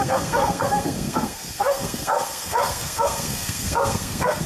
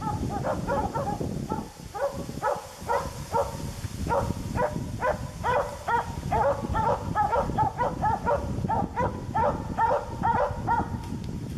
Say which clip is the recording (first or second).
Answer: second